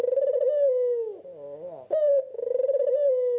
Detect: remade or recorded recorded